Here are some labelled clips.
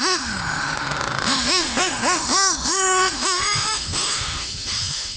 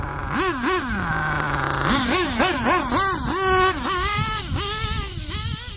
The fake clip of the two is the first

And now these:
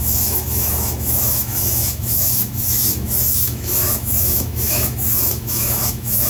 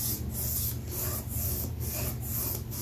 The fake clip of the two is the first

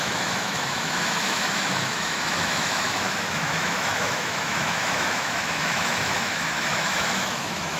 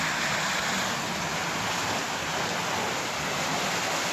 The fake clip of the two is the first